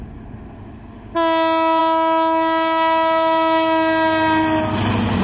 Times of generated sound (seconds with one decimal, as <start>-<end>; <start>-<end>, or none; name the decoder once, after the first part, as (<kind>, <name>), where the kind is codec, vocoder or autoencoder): none